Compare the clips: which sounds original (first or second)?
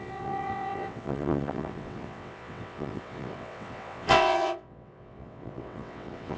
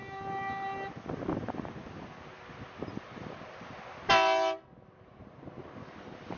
second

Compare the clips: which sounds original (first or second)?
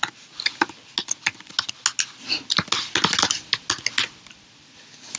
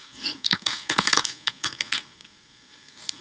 first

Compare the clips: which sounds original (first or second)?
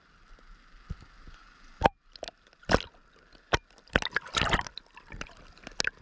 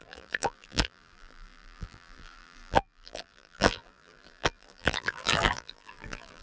first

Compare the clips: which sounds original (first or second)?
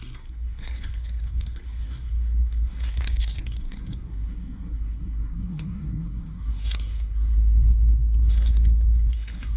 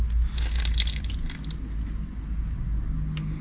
second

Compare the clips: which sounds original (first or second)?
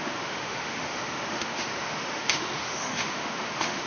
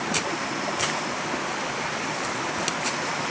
second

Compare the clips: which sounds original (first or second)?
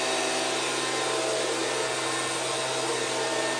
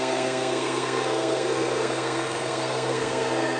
first